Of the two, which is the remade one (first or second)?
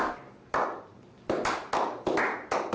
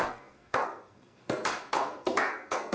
second